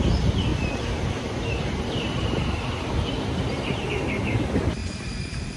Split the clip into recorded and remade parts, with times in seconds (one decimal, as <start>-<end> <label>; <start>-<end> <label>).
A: 0.0-0.5 recorded; 0.5-2.9 remade; 2.9-4.8 recorded; 4.8-5.6 remade